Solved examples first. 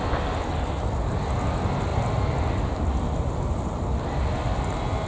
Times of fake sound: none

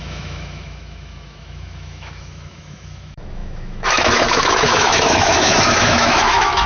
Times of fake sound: 0.0-6.7 (autoencoder, DAC-VAE)

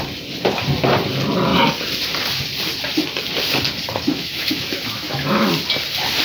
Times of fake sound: 4.1-5.5 (autoencoder, DAC-VAE)

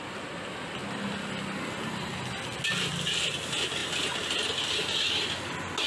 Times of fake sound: none

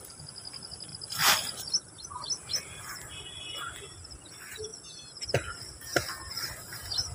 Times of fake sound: none

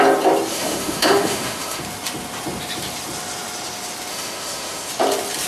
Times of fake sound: 0.5-1.8 (autoencoder, DAC-VAE); 4.1-4.9